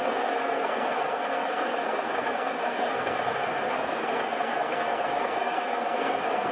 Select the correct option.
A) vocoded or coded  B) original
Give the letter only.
A